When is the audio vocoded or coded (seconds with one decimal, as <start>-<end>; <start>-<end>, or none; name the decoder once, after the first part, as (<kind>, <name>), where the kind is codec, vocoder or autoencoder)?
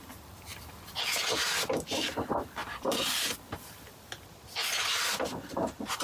0.5-1.0 (vocoder, BigVGAN v2); 2.6-4.5